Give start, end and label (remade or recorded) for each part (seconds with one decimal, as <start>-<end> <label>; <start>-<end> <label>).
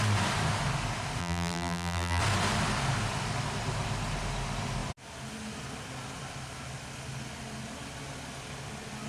0.0-1.2 recorded; 1.2-2.2 remade; 2.2-9.1 recorded